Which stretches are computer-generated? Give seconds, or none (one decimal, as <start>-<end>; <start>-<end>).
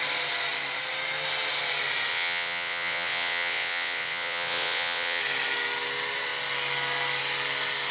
2.1-5.2